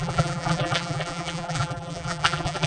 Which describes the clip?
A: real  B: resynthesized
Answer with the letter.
B